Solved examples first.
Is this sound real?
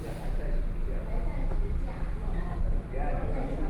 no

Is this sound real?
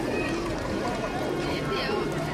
yes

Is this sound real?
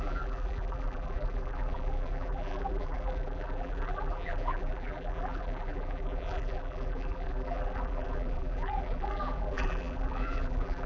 no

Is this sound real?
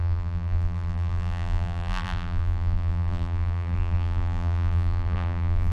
no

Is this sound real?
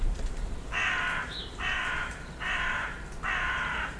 no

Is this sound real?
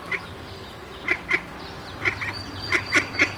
no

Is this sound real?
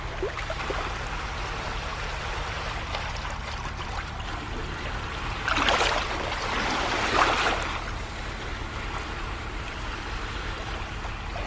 yes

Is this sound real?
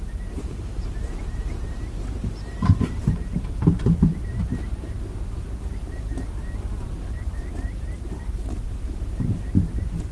no